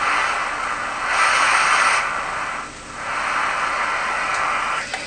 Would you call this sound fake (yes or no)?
no